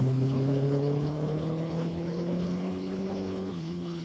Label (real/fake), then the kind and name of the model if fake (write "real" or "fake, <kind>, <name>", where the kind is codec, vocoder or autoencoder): fake, codec, HILCodec